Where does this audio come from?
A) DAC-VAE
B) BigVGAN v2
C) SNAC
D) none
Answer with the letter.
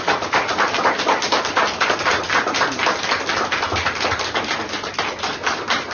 D